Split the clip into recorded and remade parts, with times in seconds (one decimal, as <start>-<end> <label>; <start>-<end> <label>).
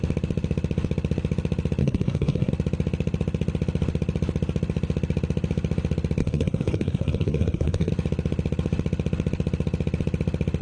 0.0-1.8 recorded; 1.8-2.5 remade; 2.5-6.2 recorded; 6.2-7.9 remade; 7.9-10.6 recorded